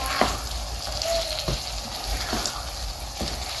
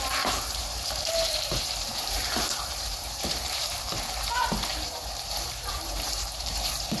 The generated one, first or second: second